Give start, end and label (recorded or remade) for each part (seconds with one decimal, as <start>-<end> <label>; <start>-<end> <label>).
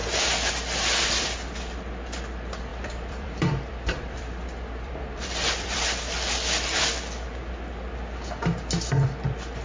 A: 0.0-2.7 recorded; 2.7-6.8 remade; 6.8-9.6 recorded